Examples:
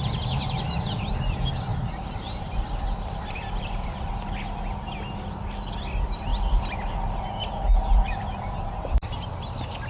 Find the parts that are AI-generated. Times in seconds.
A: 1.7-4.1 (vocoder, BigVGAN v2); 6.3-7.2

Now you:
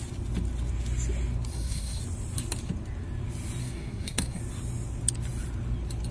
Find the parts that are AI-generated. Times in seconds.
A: 1.5-2.0 (codec, SNAC); 3.6-4.4